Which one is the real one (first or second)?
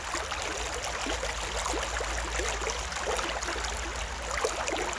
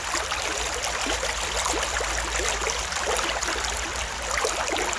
first